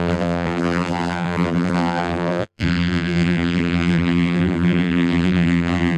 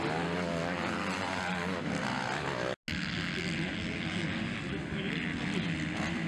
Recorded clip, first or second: second